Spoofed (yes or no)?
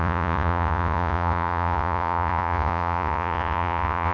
yes